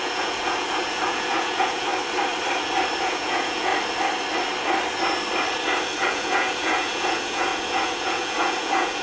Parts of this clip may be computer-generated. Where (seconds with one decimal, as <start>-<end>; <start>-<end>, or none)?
0.0-1.9; 3.0-3.7; 6.1-9.0